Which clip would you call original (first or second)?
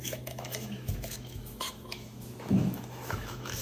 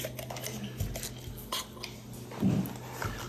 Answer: second